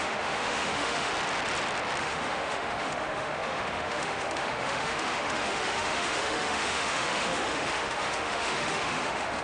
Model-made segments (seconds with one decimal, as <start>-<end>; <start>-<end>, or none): 0.0-1.1; 2.0-9.4